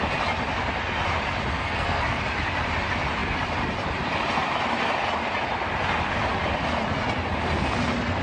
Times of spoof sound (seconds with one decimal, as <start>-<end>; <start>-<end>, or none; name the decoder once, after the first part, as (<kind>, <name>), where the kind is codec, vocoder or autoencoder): 1.5-2.2 (codec, SNAC)